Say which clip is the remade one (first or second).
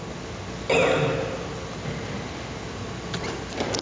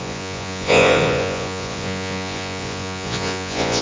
second